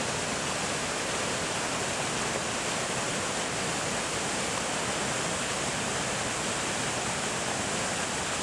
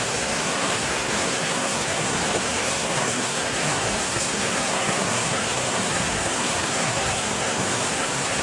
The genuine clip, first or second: first